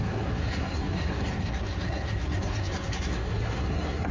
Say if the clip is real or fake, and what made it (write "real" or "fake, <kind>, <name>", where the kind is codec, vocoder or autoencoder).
fake, codec, SNAC